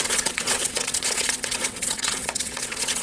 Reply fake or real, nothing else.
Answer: fake